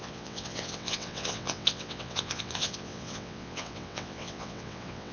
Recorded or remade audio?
remade